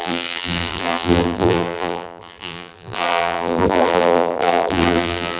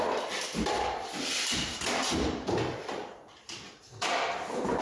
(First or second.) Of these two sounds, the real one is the second